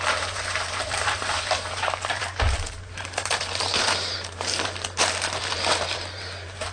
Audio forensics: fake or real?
fake